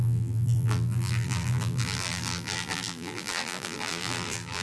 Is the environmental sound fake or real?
fake